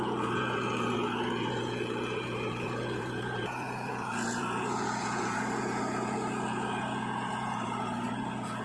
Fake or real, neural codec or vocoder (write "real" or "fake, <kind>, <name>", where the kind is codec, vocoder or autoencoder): fake, vocoder, Vocos